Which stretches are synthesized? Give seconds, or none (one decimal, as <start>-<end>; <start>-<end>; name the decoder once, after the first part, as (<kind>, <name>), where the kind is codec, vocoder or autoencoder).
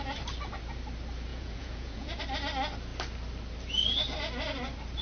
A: 1.3-2.2 (vocoder, Vocos)